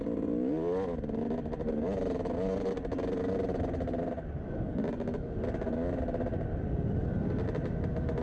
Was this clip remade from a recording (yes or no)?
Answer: no